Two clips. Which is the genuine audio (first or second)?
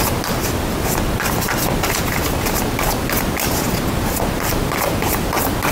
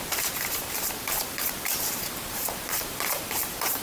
first